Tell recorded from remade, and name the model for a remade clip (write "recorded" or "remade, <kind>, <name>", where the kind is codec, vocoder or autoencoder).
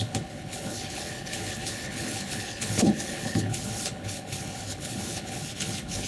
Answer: remade, codec, HILCodec